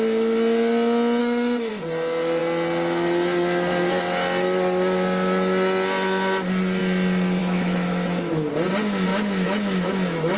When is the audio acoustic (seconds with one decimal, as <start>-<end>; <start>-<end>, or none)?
0.0-1.2; 1.7-7.4; 8.3-9.1; 9.9-10.4